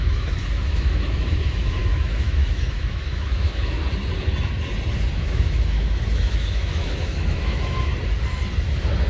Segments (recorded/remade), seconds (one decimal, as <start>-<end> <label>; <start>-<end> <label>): 0.0-3.8 remade; 3.8-5.1 recorded; 5.1-7.9 remade; 7.9-9.1 recorded